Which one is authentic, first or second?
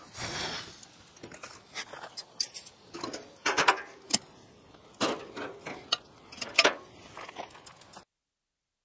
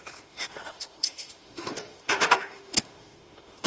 first